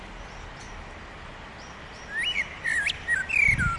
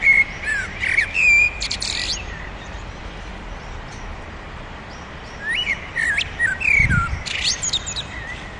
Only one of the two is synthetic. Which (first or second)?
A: second